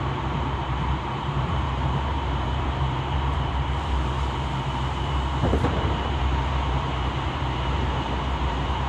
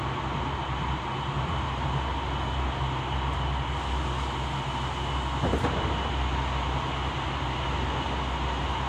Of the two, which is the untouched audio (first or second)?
second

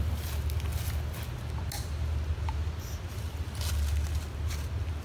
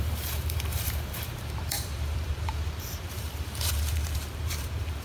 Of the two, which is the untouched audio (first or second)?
first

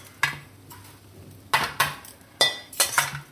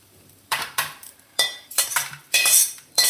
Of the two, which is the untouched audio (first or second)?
first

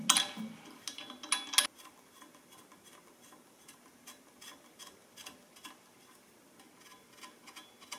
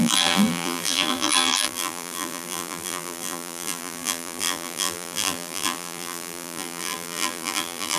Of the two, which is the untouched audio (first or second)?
first